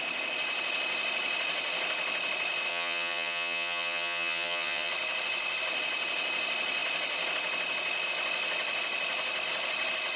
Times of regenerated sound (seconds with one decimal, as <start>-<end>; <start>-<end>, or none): 2.7-4.9